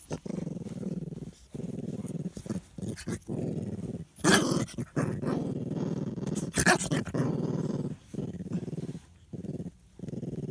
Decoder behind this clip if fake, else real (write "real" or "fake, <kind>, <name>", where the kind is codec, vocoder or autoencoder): real